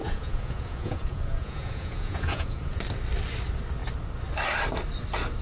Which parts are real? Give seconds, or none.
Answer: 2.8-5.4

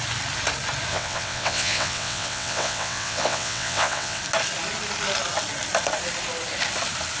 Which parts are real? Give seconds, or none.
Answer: 0.0-0.9; 4.2-7.2

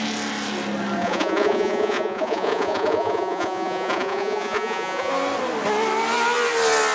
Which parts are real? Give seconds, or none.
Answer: 0.0-1.0; 5.1-6.9

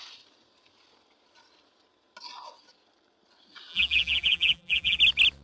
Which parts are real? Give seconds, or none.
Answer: 0.0-3.7; 5.0-5.4